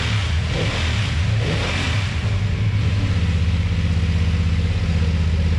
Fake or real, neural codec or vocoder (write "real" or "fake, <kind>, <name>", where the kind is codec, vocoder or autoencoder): real